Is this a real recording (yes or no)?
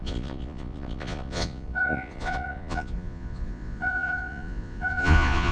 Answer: no